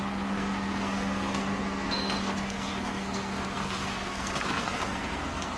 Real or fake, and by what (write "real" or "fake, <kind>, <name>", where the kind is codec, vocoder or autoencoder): fake, codec, SNAC